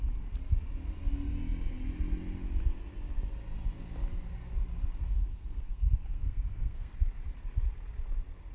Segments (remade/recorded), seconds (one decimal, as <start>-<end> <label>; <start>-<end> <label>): 0.0-5.0 recorded; 5.0-6.9 remade; 6.9-8.5 recorded